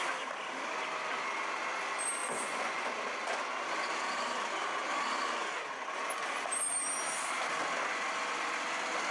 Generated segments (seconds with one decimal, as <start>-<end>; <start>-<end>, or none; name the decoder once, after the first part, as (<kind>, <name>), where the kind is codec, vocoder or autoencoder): 2.2-2.9 (vocoder, Vocos)